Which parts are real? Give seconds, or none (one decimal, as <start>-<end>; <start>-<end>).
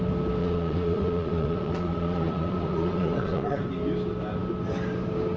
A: 0.0-0.4; 3.6-5.4